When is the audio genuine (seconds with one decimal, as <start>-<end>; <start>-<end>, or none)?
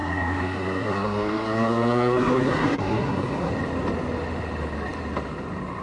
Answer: 3.5-5.8